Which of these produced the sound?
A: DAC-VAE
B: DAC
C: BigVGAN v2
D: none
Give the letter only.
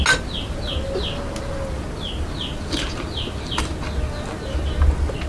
D